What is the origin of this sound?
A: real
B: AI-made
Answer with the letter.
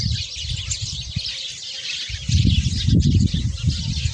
A